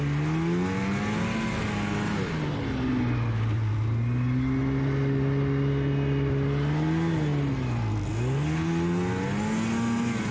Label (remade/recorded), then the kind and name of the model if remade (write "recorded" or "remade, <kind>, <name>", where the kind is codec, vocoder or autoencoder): recorded